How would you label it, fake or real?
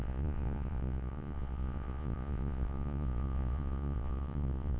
fake